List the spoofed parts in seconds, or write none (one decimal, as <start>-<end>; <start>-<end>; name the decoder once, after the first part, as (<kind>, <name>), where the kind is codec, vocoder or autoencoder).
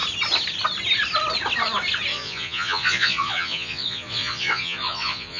2.1-5.4 (vocoder, Vocos)